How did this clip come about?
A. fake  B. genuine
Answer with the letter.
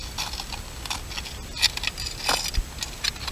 B